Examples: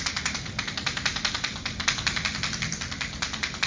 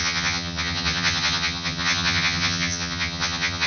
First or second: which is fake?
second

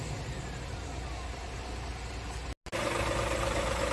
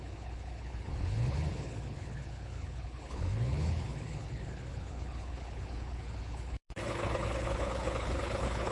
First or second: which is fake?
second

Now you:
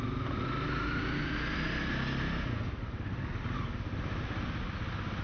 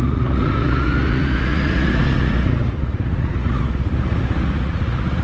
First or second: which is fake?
second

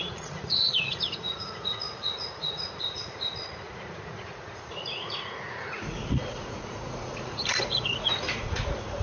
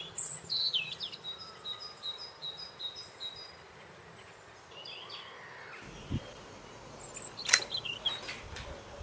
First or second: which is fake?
first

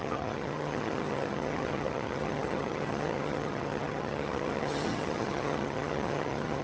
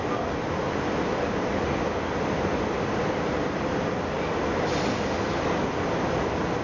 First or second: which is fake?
first